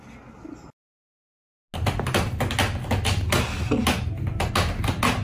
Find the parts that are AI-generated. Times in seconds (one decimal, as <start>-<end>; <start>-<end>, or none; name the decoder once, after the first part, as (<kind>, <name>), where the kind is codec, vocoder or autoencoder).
none